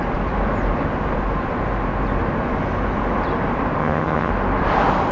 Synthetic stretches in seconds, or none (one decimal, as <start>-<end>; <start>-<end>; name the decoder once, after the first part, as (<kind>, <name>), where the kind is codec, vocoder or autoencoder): 3.8-4.3 (vocoder, HiFi-GAN)